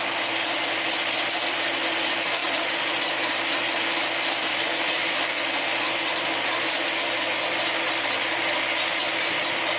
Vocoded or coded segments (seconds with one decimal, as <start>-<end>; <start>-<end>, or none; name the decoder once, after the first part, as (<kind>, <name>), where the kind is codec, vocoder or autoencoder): 2.4-4.5 (vocoder, BigVGAN v2)